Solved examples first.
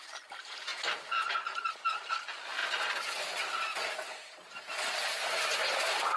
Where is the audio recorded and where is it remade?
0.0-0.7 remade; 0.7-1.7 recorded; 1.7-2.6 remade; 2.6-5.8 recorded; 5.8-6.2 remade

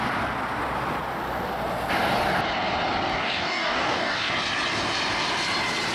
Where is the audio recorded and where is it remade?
0.0-3.2 recorded; 3.2-4.3 remade; 4.3-5.9 recorded

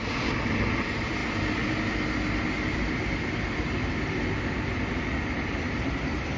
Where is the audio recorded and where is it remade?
0.0-6.4 recorded